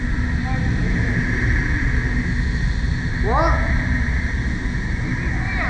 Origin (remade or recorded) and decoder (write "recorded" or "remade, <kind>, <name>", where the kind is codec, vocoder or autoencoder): recorded